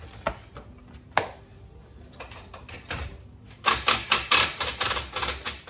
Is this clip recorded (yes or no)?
yes